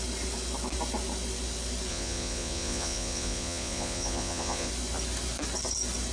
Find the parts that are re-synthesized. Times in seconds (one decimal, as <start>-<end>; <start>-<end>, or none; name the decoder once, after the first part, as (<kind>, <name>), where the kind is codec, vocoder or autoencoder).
1.9-4.7 (vocoder, Vocos)

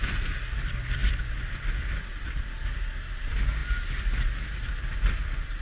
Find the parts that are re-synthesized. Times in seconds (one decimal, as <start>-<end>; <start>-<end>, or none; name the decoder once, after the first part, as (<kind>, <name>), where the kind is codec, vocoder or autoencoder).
none

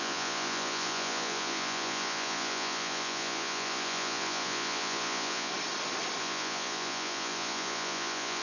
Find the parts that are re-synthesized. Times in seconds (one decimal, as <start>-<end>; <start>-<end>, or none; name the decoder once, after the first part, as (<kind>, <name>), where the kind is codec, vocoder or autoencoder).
0.0-5.5 (vocoder, Vocos); 6.2-8.4

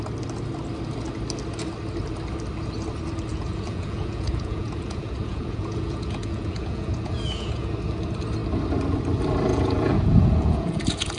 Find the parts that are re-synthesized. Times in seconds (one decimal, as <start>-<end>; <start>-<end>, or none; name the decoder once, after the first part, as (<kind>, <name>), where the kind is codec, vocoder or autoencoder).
3.3-7.7 (vocoder, Vocos); 9.5-11.2